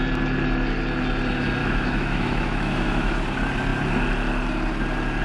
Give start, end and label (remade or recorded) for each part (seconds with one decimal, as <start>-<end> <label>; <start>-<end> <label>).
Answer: 0.0-1.6 recorded; 1.6-3.2 remade; 3.2-5.2 recorded